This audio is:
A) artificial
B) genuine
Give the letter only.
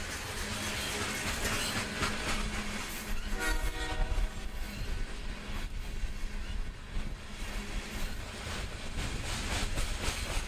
B